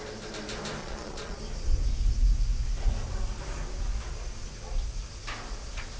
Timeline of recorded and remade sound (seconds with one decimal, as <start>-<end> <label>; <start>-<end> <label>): 0.0-0.8 recorded; 0.8-1.4 remade; 1.4-6.0 recorded